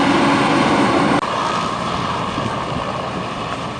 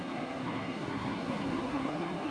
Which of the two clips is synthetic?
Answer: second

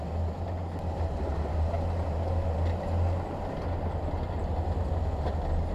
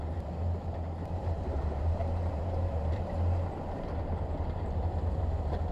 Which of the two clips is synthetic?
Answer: second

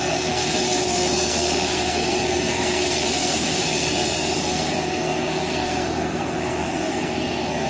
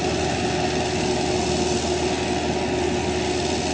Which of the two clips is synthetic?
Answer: first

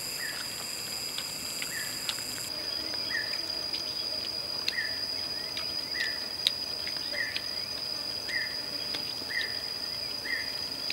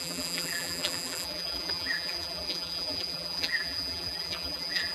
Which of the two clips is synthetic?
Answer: second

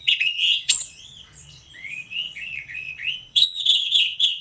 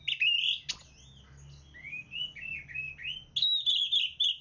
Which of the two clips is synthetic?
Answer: first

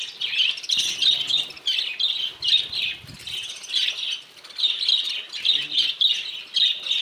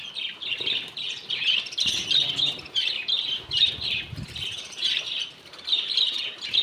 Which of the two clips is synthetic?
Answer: second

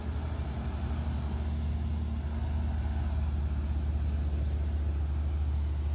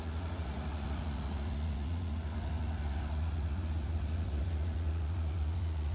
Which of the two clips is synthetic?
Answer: second